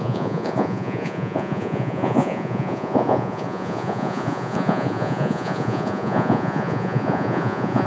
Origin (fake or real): fake